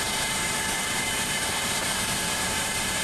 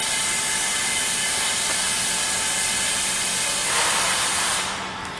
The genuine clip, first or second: second